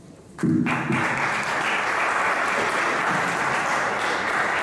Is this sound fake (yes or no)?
no